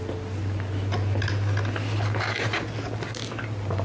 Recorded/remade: recorded